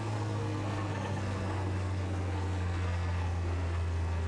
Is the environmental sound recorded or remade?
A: remade